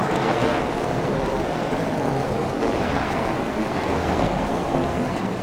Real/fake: fake